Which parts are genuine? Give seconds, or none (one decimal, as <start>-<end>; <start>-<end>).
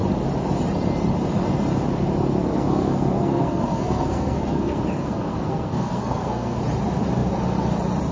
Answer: 0.0-2.4; 6.6-8.1